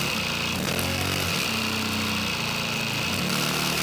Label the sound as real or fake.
real